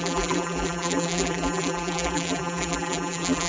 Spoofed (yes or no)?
yes